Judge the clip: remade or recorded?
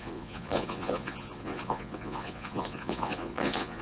remade